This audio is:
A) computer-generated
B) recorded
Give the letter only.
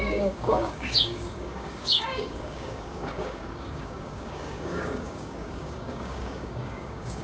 A